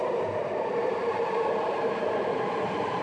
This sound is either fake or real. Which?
real